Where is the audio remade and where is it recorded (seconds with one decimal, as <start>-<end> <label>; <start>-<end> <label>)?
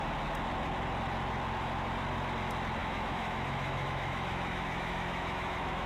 0.0-2.8 recorded; 2.8-5.9 remade